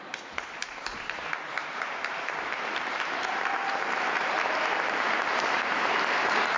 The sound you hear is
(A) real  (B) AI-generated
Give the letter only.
B